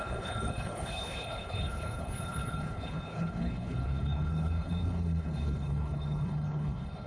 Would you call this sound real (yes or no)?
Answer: no